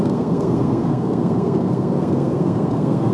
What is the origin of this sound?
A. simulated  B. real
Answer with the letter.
A